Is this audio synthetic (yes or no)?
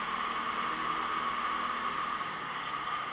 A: no